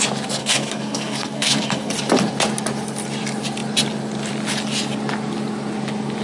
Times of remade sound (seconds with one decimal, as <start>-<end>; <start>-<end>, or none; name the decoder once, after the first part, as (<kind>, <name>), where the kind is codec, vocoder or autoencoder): 0.4-1.9 (codec, SNAC)